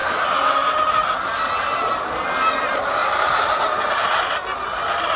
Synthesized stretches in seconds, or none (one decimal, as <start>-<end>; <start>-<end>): none